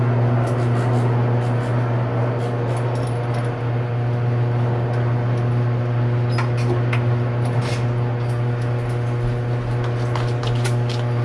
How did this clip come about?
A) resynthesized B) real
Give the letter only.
B